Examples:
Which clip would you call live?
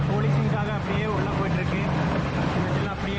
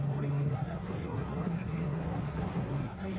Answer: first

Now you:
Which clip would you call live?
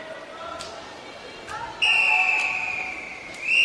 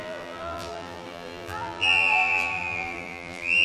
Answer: first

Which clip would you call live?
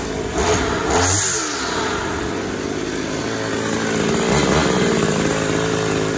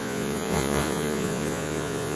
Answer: first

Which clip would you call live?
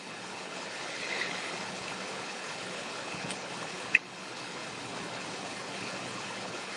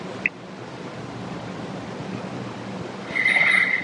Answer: second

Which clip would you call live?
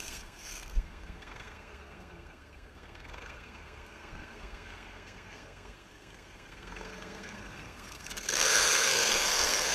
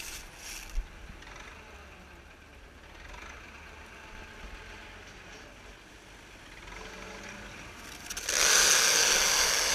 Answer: second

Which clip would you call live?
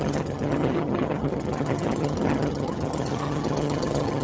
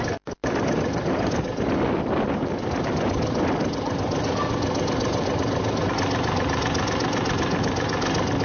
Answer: second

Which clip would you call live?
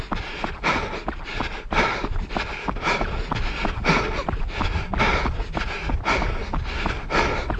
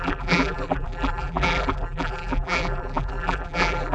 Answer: first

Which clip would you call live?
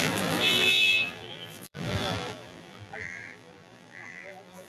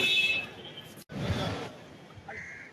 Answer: second